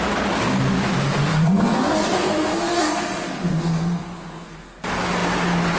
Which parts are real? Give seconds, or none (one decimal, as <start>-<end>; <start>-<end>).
0.0-1.3; 4.8-5.8

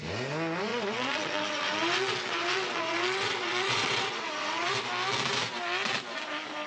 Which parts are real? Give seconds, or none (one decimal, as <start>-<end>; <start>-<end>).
0.0-0.7; 4.7-6.7

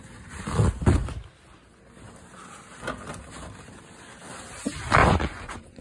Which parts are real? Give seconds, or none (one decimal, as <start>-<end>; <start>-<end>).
0.0-5.0

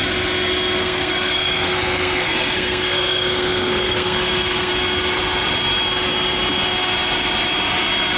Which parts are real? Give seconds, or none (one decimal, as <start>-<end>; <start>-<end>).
0.0-0.8; 4.7-8.2

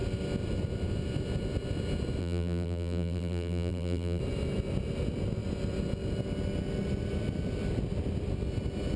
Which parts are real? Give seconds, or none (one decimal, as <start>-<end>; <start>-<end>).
0.0-2.2; 4.2-9.0

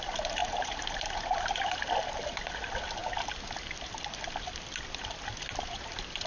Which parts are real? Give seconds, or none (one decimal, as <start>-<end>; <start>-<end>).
0.0-0.4; 2.0-6.3